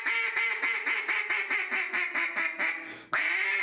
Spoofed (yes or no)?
no